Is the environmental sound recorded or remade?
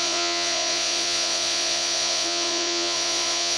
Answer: remade